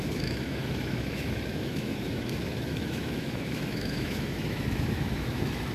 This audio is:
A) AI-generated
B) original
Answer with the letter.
A